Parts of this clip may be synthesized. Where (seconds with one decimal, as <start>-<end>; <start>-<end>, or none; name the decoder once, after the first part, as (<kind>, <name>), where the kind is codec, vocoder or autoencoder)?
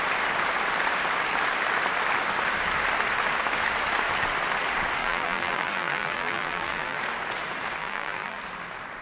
5.0-7.0 (vocoder, BigVGAN v2); 7.8-8.4